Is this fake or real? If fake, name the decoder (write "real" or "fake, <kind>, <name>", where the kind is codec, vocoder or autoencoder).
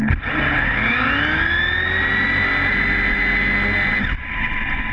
real